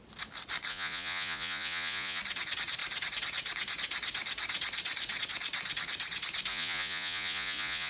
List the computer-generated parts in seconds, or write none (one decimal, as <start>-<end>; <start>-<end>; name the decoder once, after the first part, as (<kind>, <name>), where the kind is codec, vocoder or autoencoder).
0.7-2.2 (vocoder, Vocos); 6.5-7.9